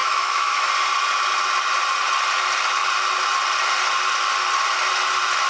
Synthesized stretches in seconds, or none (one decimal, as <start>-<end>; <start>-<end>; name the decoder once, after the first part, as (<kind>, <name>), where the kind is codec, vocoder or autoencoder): 0.0-0.7 (autoencoder, DAC-VAE)